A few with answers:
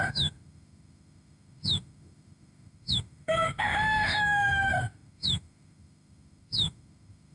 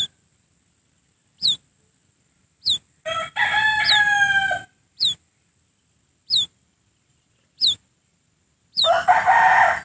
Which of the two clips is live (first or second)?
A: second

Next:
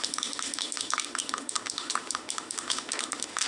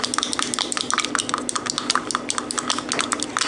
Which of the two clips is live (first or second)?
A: second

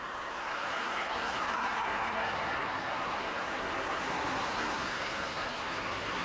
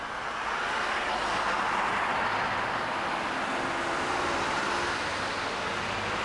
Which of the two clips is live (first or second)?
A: second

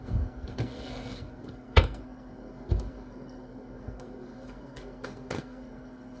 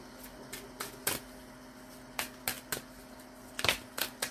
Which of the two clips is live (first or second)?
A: second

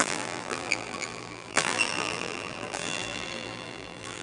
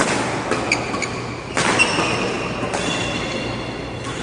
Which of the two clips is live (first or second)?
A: second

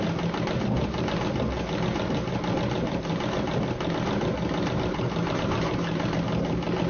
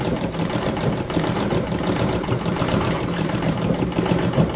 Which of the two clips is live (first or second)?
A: first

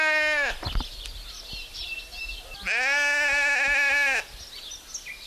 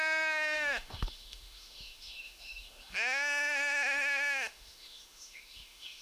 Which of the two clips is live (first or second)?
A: first